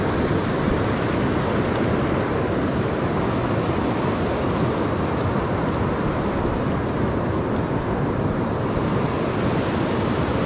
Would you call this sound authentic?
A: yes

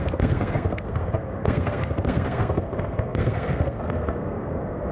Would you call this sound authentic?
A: no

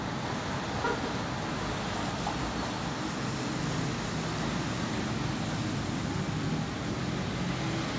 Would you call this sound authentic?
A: yes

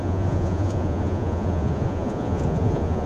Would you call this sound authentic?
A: no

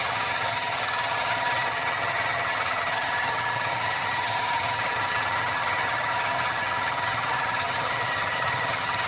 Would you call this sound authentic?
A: no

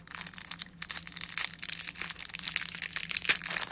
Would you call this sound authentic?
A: yes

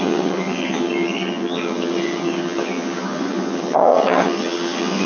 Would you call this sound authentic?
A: no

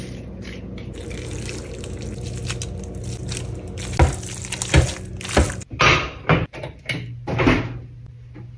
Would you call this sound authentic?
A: yes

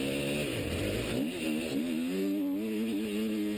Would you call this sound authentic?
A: yes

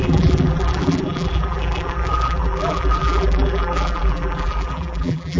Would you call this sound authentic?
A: no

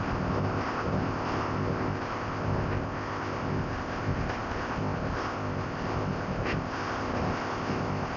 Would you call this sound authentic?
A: no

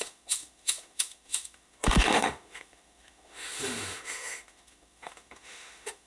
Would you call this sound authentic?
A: no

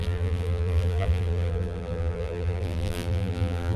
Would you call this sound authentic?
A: no